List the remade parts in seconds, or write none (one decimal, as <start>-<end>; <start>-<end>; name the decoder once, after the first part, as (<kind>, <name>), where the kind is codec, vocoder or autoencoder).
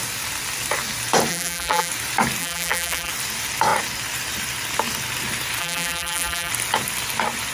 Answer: 1.3-1.9 (vocoder, BigVGAN v2); 2.4-3.1; 5.6-6.5